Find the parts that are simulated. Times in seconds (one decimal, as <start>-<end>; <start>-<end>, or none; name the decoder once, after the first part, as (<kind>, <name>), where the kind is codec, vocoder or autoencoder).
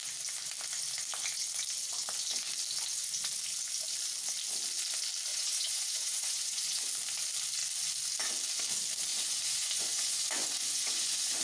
5.3-6.9 (vocoder, Vocos); 9.1-11.4